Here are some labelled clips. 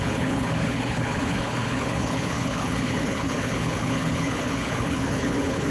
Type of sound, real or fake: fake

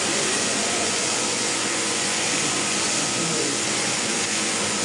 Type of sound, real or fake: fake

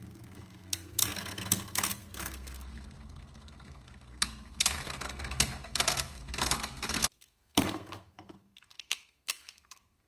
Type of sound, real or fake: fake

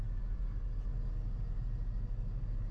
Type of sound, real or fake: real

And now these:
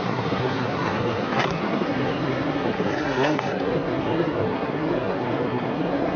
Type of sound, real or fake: fake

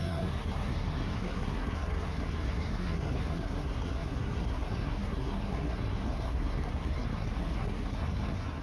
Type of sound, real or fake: fake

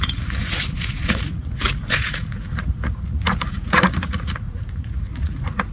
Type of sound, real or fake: fake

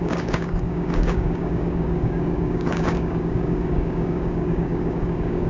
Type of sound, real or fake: fake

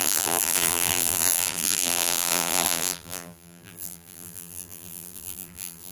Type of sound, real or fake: fake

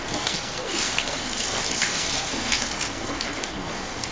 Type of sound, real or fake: fake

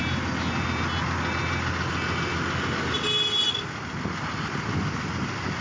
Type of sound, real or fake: real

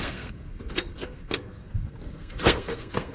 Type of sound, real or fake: fake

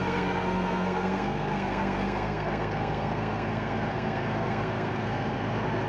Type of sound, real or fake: fake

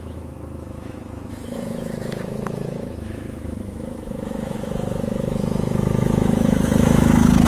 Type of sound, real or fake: fake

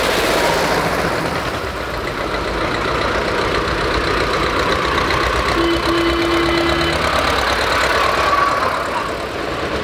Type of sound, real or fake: real